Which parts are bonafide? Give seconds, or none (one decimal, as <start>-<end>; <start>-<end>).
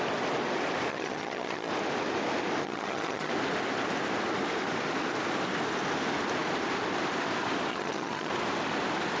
0.0-0.9; 1.7-2.6; 3.3-7.7; 8.3-9.2